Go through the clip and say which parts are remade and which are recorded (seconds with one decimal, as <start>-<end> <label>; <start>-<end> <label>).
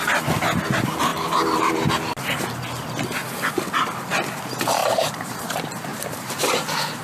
0.0-1.1 recorded; 1.1-1.9 remade; 1.9-4.8 recorded; 4.8-5.4 remade; 5.4-5.9 recorded; 5.9-7.0 remade